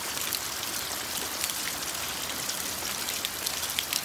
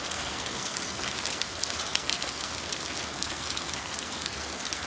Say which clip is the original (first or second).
first